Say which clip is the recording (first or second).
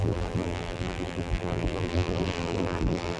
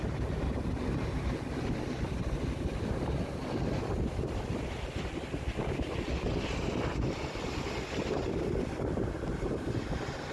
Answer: second